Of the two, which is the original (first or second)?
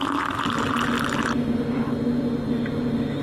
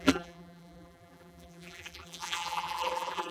first